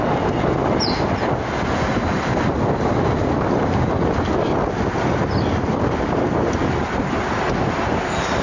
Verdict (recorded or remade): recorded